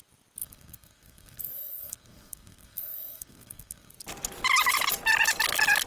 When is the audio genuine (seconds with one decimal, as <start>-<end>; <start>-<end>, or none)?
0.0-0.4; 3.9-5.9